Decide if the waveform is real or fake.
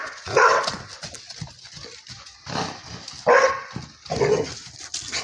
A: real